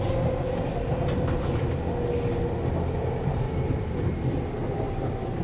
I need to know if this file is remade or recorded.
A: recorded